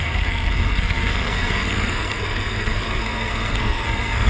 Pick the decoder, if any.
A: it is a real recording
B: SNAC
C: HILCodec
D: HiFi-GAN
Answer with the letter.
B